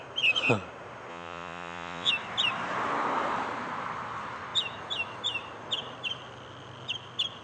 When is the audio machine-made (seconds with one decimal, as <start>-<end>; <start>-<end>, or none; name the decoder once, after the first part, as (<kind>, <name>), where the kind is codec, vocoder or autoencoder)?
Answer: 1.1-2.1 (vocoder, Vocos)